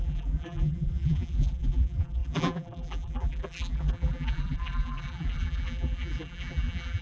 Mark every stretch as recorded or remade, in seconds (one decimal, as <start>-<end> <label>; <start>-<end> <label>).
0.0-7.0 remade